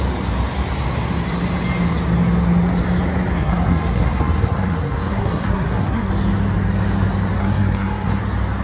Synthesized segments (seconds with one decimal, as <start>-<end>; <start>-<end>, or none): 3.3-6.1; 7.4-8.2